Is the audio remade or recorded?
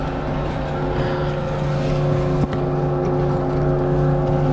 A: recorded